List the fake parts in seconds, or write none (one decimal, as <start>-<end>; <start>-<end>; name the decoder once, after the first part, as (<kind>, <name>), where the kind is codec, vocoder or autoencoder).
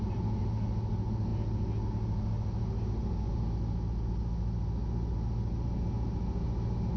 none